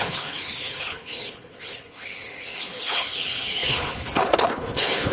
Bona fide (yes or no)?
no